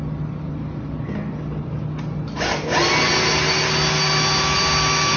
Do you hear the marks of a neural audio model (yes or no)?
no